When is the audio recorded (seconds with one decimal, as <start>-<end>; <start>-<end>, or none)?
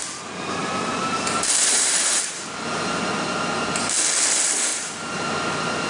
0.0-0.6; 3.0-4.7; 5.3-5.9